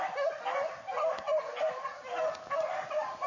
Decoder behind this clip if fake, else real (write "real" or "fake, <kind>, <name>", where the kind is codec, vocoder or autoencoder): real